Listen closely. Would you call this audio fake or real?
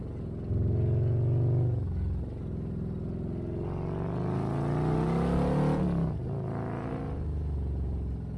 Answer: real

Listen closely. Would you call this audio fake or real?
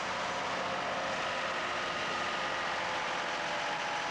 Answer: real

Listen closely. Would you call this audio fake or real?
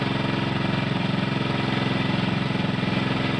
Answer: real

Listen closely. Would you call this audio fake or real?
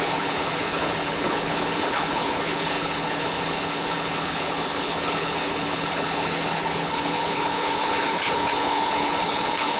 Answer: fake